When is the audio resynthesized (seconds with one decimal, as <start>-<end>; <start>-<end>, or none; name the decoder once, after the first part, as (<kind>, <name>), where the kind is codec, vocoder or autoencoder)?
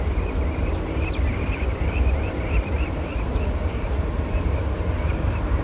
1.3-4.4 (vocoder, BigVGAN v2)